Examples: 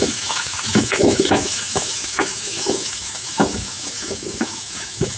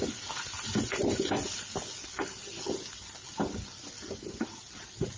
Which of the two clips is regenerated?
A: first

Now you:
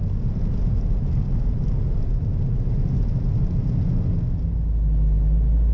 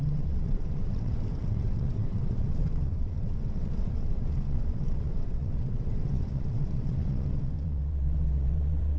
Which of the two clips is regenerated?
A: second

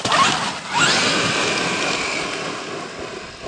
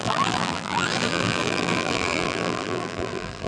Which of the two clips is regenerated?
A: second